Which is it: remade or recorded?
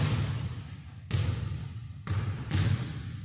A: recorded